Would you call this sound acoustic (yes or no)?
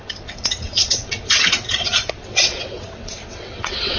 no